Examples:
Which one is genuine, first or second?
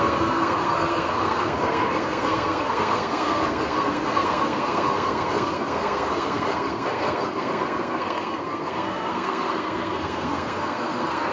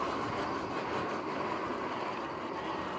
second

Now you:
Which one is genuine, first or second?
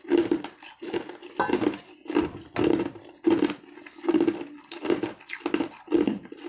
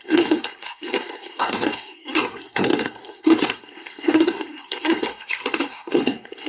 first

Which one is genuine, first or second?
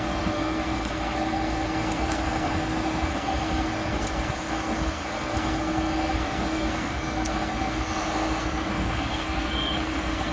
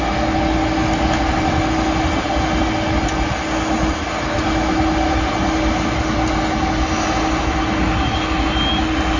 second